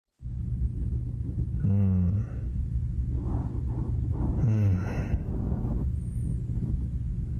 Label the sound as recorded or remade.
recorded